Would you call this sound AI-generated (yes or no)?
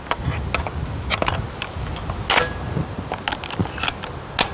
no